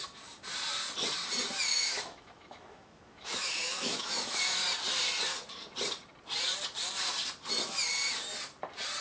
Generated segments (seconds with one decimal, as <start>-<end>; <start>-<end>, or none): 1.7-4.4